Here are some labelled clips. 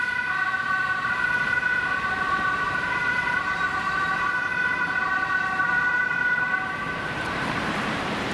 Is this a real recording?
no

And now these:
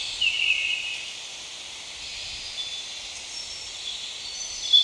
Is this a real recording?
yes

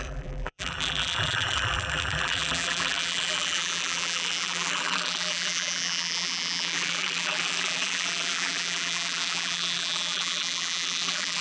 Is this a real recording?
no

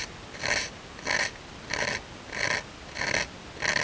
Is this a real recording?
yes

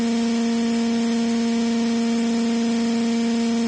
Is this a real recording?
yes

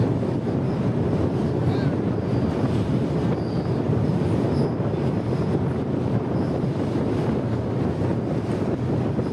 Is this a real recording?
yes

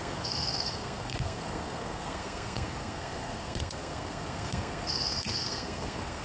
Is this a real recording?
no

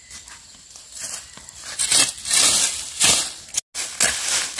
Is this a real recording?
yes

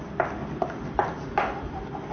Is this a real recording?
yes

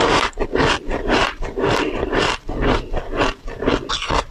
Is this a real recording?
yes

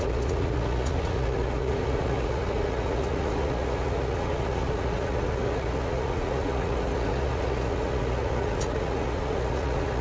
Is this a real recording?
no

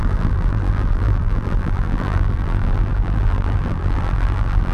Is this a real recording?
no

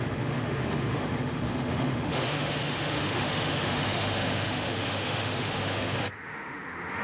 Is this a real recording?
no